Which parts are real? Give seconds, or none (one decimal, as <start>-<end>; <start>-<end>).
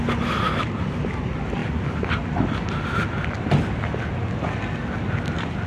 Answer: 0.0-5.7